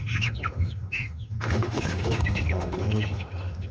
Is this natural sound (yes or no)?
no